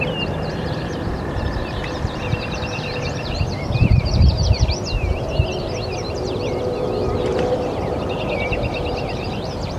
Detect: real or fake fake